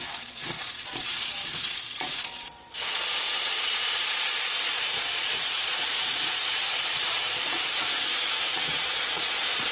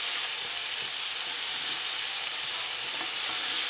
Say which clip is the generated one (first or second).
first